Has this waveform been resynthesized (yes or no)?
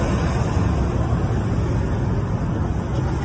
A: no